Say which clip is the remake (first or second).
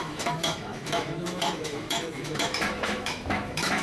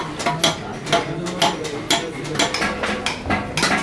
first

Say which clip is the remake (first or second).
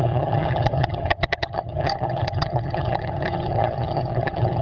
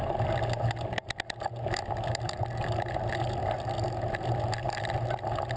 first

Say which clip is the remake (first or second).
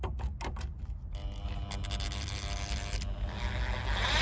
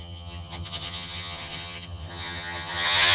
second